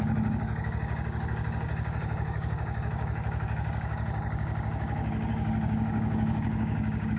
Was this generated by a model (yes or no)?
yes